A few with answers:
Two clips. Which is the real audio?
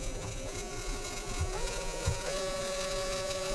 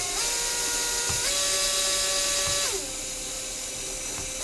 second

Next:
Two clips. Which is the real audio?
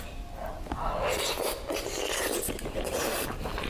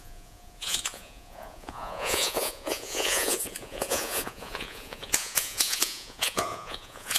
first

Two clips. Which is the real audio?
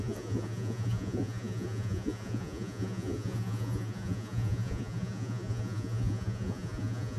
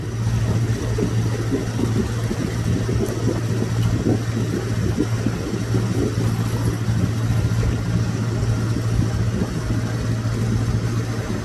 second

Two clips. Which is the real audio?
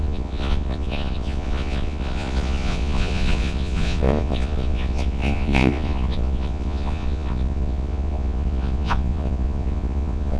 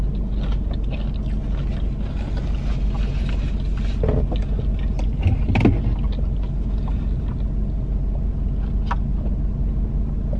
second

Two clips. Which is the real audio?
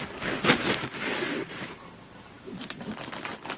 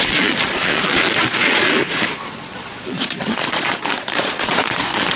first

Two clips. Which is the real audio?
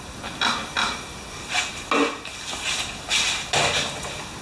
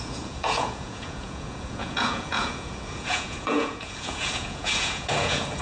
first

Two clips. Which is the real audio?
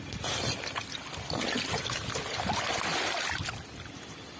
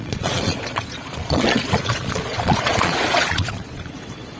first